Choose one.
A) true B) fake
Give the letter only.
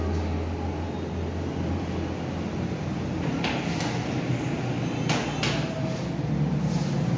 A